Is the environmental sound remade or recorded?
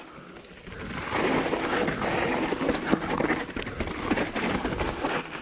recorded